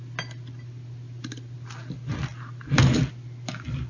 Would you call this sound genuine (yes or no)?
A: yes